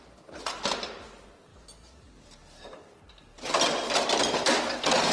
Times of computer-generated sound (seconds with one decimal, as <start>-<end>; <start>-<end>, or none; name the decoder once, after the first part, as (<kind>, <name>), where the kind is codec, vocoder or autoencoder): 1.5-4.6 (vocoder, BigVGAN v2)